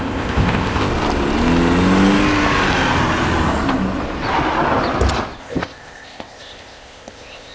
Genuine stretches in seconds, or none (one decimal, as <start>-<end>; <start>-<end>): 0.9-5.4

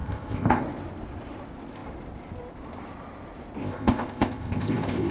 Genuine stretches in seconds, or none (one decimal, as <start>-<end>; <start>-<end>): 0.6-3.6

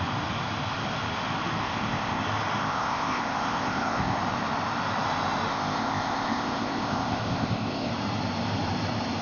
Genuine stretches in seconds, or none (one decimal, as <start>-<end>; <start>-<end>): 0.0-1.6; 2.2-2.6; 4.2-5.5; 7.9-9.2

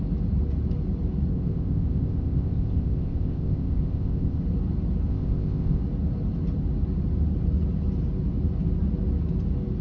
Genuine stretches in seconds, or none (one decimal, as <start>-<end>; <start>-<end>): 0.0-1.3; 4.4-5.1; 5.8-9.8

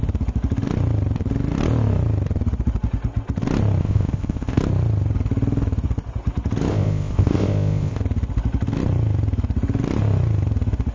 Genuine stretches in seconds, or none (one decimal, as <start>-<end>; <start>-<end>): 0.0-3.8; 4.6-6.7; 8.0-10.9

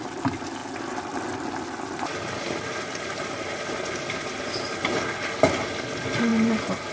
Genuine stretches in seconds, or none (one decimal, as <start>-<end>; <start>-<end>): 0.0-6.9

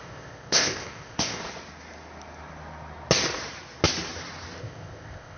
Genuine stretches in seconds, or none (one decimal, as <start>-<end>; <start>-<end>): 1.4-4.6

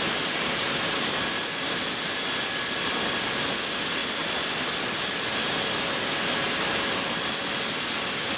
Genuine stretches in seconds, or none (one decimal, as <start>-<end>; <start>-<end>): 0.0-8.4